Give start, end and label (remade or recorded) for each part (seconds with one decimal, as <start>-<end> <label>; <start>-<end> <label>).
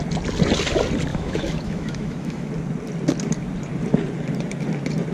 0.0-1.1 recorded; 1.1-2.5 remade; 2.5-5.1 recorded